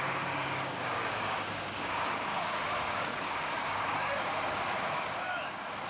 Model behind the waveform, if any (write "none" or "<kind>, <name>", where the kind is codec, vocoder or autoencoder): codec, DAC